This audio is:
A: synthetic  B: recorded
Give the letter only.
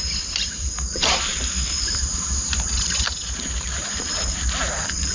A